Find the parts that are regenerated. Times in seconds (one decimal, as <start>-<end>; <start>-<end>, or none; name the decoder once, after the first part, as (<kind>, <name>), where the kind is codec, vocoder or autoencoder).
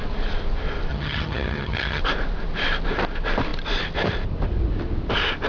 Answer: 0.9-2.0 (vocoder, HiFi-GAN)